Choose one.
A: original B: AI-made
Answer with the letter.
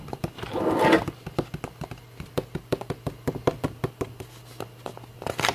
A